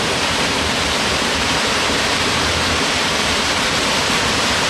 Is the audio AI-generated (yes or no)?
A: yes